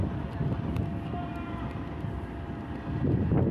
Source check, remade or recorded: recorded